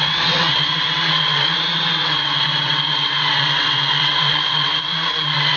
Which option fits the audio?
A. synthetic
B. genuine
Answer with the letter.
A